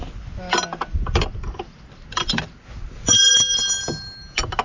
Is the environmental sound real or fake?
real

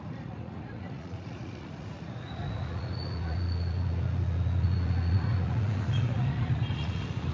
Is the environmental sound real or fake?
fake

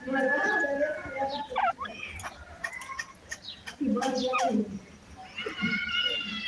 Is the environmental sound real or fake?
real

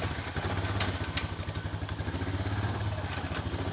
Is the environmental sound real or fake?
real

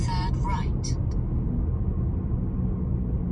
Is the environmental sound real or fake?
real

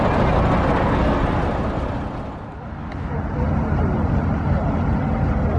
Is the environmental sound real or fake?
real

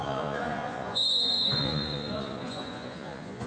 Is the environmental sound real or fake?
fake